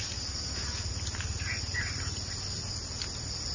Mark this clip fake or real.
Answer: real